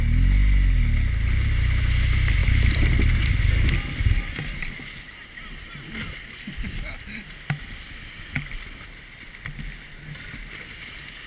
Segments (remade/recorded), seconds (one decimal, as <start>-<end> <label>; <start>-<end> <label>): 0.0-2.4 recorded; 2.4-5.1 remade; 5.1-11.3 recorded